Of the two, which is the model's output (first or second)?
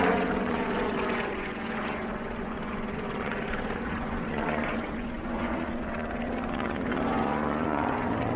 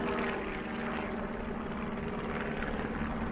first